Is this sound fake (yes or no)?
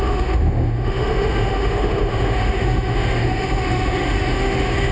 yes